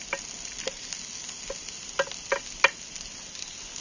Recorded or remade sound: recorded